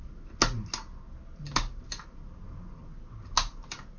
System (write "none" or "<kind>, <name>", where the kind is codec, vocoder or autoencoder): none